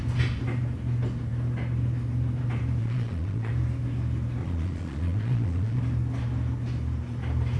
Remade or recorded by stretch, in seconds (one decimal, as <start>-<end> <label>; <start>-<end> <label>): 0.0-2.8 recorded; 2.8-3.5 remade; 3.5-4.4 recorded; 4.4-5.8 remade; 5.8-7.6 recorded